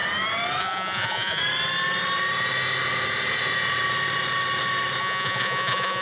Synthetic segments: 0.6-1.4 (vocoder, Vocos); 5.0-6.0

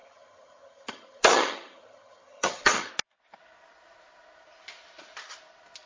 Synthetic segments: 0.0-2.9 (vocoder, HiFi-GAN)

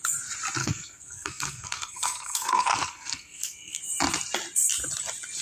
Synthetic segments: 0.6-3.8 (codec, SNAC)

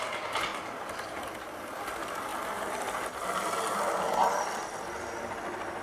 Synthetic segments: 0.5-1.6 (vocoder, BigVGAN v2)

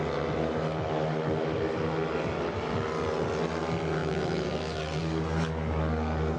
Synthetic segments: 4.0-5.0 (vocoder, BigVGAN v2)

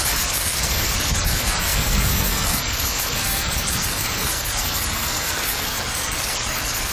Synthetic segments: 0.0-6.9 (codec, SNAC)

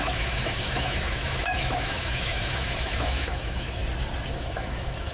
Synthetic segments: 0.0-3.8 (autoencoder, DAC-VAE); 4.3-5.1

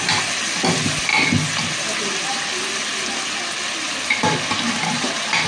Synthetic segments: none